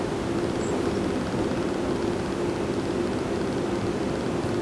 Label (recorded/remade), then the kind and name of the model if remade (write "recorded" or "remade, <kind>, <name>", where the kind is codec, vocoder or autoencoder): recorded